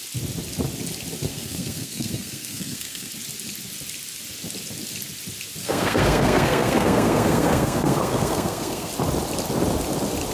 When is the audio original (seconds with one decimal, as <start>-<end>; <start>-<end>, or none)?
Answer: 0.0-1.3; 3.1-5.6; 8.9-10.3